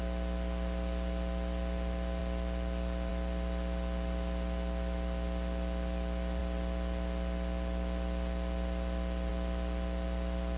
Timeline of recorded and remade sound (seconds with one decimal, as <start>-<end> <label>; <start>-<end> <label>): 0.0-10.6 recorded